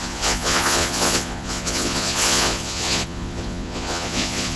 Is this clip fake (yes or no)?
yes